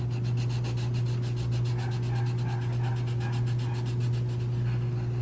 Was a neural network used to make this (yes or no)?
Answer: no